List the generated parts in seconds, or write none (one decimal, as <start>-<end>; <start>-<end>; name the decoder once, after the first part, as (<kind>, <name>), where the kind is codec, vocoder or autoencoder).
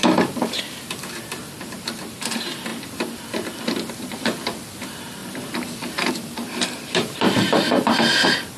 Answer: 0.0-5.2 (vocoder, BigVGAN v2); 6.1-8.6